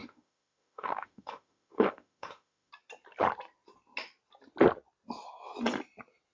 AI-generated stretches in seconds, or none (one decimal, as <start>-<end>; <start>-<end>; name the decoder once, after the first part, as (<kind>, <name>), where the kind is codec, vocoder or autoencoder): 0.0-2.7 (autoencoder, DAC-VAE)